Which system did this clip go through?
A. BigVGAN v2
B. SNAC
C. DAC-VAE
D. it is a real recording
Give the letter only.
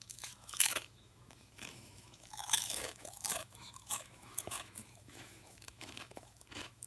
C